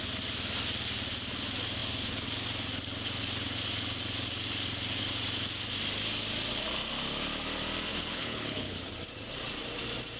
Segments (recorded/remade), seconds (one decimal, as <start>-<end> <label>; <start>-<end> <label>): 0.0-7.9 recorded; 7.9-8.9 remade; 8.9-10.2 recorded